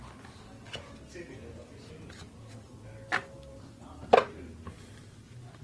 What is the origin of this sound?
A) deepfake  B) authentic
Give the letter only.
B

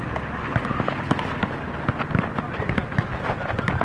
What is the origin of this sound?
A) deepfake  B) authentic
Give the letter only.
B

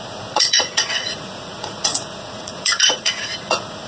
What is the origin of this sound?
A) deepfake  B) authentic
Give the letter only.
A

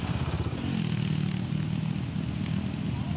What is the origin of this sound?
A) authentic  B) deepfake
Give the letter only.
A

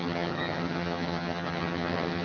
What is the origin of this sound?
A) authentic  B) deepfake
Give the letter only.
B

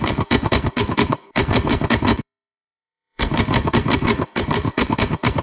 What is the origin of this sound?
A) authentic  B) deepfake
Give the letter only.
B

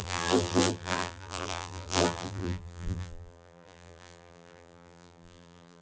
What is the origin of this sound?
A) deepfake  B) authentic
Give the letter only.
A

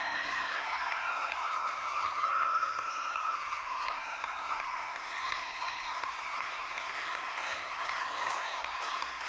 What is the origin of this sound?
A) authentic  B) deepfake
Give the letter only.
B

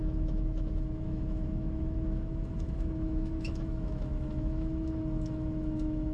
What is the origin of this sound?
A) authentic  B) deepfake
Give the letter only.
B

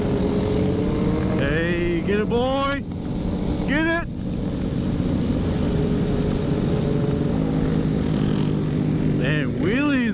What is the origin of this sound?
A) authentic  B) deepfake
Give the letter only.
A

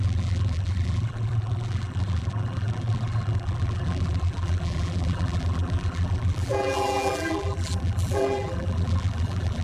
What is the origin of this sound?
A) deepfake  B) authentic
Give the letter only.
A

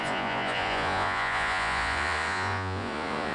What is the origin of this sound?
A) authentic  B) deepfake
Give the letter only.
B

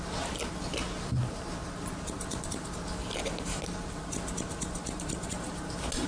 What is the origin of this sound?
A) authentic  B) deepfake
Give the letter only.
A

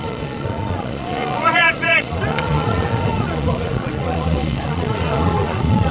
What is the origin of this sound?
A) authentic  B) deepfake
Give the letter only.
B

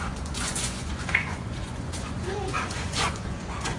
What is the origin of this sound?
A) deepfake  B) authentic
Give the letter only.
A